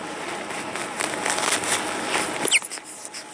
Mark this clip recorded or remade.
recorded